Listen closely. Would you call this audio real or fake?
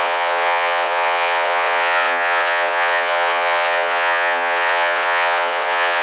fake